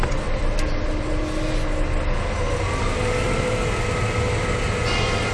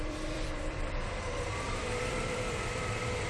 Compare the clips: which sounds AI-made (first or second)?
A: second